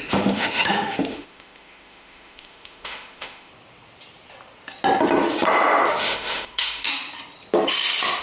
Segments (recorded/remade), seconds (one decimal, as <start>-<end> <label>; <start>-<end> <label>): 0.0-3.5 remade; 3.5-5.9 recorded; 5.9-6.9 remade; 6.9-8.2 recorded